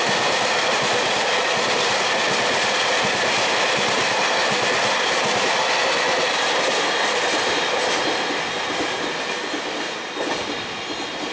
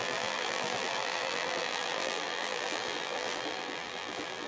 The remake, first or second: second